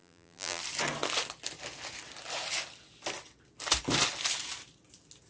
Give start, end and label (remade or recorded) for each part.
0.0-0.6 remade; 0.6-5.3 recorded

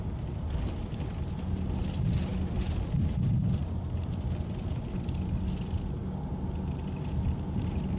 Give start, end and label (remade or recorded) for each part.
0.0-8.0 recorded

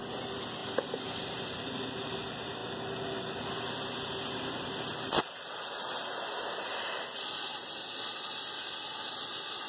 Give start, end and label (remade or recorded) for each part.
0.0-9.7 recorded

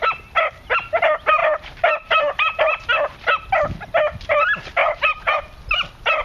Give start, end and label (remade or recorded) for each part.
0.0-1.4 recorded; 1.4-2.9 remade; 2.9-4.8 recorded; 4.8-5.4 remade; 5.4-6.2 recorded

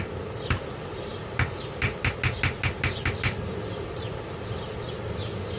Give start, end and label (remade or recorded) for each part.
0.0-5.6 recorded

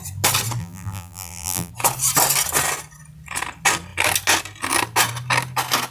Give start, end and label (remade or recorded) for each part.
0.0-0.6 recorded; 0.6-1.7 remade; 1.7-5.9 recorded

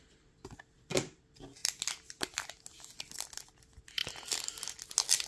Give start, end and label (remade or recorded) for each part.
0.0-5.3 recorded